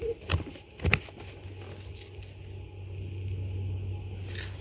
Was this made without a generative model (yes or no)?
yes